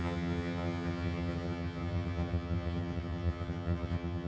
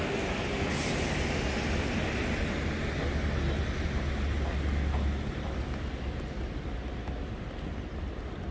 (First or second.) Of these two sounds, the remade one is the first